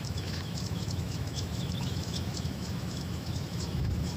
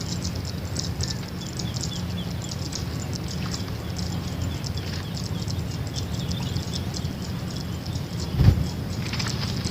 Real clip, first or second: second